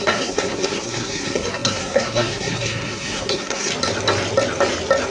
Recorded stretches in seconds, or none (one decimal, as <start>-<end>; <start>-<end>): 3.7-5.1